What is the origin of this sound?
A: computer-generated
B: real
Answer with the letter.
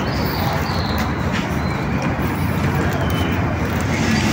B